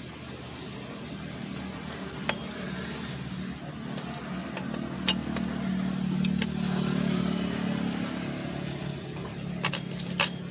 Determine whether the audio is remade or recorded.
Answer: recorded